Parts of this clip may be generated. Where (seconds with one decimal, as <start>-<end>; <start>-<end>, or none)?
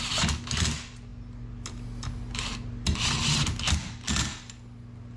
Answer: none